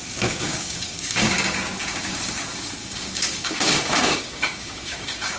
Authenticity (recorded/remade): remade